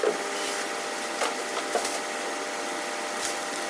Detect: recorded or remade recorded